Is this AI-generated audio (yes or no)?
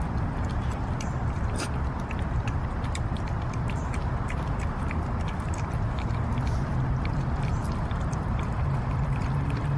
yes